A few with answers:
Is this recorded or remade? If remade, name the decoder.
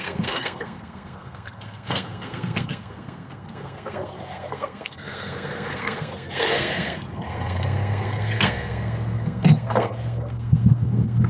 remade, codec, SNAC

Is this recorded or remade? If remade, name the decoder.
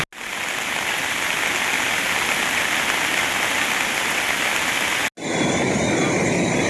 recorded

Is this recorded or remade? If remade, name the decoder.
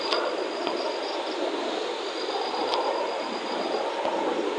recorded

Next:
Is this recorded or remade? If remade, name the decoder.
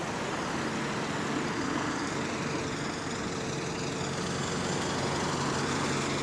recorded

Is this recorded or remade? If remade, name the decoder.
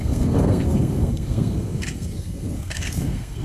remade, codec, SNAC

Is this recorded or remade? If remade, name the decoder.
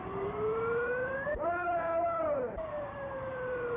remade, vocoder, BigVGAN v2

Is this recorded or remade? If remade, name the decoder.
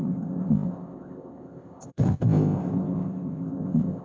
remade, codec, ZipCodec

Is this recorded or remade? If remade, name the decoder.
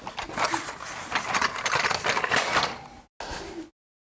recorded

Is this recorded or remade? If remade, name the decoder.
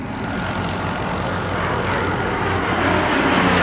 recorded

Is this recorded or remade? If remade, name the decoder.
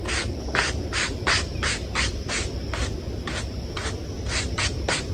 recorded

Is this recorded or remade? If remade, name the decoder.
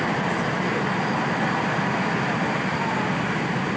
recorded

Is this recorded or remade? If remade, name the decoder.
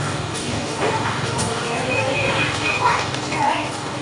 remade, codec, DAC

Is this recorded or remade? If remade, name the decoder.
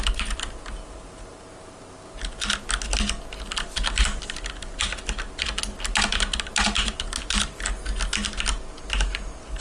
recorded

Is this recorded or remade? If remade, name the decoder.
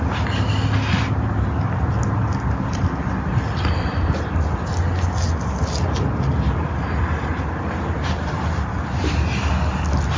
recorded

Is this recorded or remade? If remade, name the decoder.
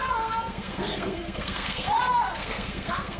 remade, codec, SNAC